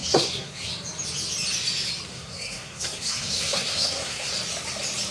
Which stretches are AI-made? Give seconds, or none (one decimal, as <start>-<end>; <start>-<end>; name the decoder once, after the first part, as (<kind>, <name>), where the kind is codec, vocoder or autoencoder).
0.0-0.7 (codec, SNAC); 2.1-4.3